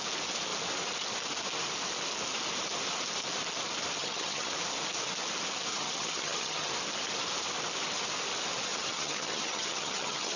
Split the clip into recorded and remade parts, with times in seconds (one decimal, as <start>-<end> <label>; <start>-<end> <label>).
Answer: 0.0-4.0 recorded; 4.0-4.5 remade; 4.5-5.7 recorded; 5.7-6.7 remade; 6.7-8.7 recorded; 8.7-10.4 remade